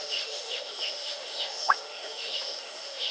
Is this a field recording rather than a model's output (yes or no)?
no